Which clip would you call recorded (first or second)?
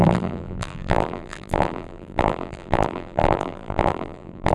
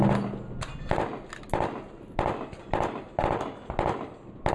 second